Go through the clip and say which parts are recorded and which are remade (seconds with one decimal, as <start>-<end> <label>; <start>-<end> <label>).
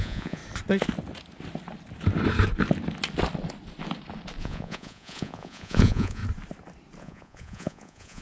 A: 0.0-0.4 remade; 0.4-4.4 recorded; 4.4-6.2 remade; 6.2-7.0 recorded; 7.0-8.2 remade